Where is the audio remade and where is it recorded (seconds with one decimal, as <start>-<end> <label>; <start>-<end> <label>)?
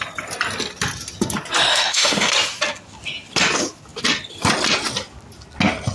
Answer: 0.0-1.7 recorded; 1.7-2.3 remade; 2.3-5.9 recorded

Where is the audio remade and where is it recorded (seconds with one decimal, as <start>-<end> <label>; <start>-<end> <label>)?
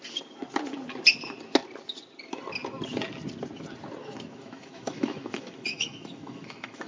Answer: 0.0-4.0 recorded; 4.0-6.9 remade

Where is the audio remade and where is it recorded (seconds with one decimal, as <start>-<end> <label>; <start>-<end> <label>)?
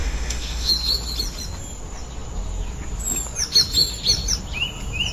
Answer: 0.0-0.7 remade; 0.7-5.1 recorded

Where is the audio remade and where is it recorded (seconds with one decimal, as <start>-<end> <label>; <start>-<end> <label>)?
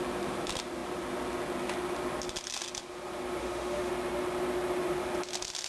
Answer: 0.0-3.4 recorded; 3.4-3.9 remade; 3.9-5.7 recorded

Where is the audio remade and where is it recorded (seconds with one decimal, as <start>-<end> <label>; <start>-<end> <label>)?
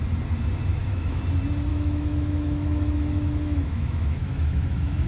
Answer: 0.0-0.7 recorded; 0.7-1.2 remade; 1.2-1.7 recorded; 1.7-5.1 remade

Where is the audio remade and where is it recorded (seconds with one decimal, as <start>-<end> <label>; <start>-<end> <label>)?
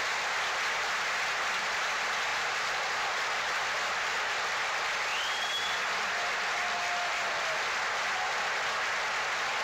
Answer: 0.0-9.6 recorded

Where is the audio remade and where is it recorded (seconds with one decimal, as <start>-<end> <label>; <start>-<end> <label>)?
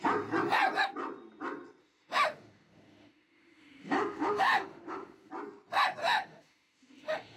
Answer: 0.0-1.8 recorded; 1.8-5.3 remade; 5.3-6.0 recorded; 6.0-7.4 remade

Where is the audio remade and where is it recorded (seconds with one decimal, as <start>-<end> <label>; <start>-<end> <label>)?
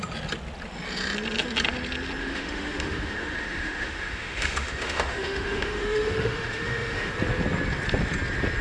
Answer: 0.0-2.2 recorded; 2.2-7.1 remade; 7.1-8.6 recorded